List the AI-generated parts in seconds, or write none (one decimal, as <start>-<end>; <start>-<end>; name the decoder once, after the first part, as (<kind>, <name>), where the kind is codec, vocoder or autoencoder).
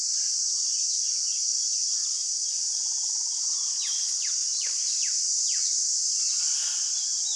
none